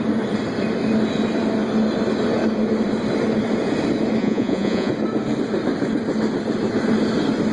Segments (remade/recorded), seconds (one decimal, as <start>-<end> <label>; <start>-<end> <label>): 0.0-4.2 recorded; 4.2-4.9 remade; 4.9-7.5 recorded